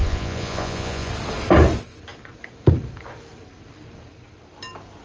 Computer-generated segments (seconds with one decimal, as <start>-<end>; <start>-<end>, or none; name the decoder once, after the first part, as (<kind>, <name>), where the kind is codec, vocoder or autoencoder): 0.0-1.1 (vocoder, Vocos)